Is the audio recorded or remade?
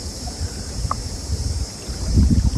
remade